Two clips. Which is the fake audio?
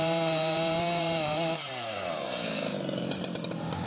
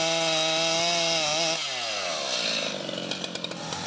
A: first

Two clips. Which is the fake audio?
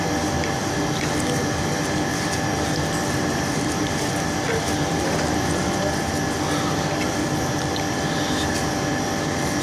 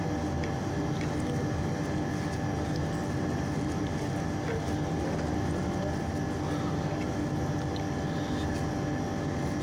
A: first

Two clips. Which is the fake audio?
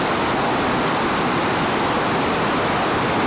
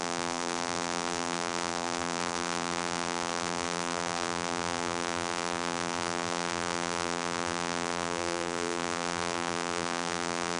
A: second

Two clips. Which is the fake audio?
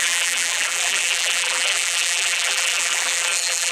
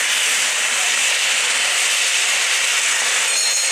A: first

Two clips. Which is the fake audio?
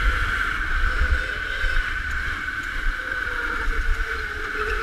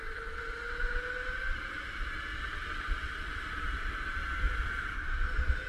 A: first